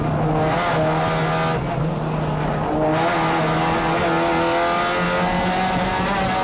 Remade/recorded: recorded